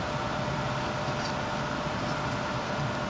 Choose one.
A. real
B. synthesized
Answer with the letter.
A